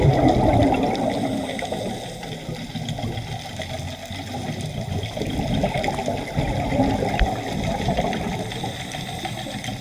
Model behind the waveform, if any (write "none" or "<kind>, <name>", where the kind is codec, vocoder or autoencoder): none